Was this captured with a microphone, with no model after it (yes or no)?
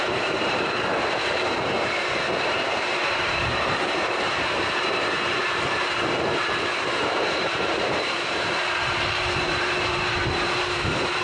no